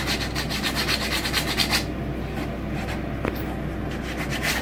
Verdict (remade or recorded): recorded